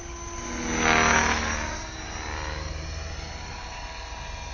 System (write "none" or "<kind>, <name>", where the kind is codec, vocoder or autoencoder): none